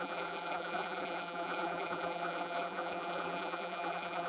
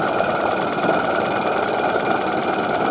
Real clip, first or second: second